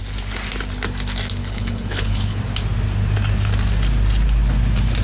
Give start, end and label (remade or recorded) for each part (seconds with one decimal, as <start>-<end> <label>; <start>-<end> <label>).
0.0-1.4 recorded; 1.4-2.4 remade; 2.4-5.0 recorded